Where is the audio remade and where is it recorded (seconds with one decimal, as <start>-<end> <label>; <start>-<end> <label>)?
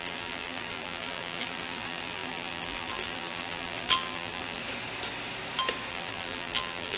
0.0-4.6 remade; 4.6-5.9 recorded; 5.9-7.0 remade